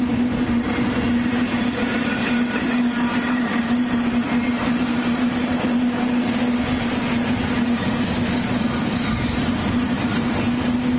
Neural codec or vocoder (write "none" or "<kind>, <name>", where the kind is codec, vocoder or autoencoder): vocoder, BigVGAN v2